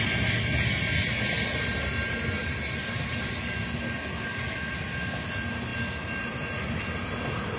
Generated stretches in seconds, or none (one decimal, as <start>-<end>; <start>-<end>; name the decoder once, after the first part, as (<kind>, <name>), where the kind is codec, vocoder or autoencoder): 2.4-3.2 (vocoder, BigVGAN v2)